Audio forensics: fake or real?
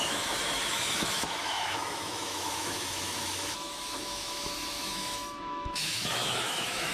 fake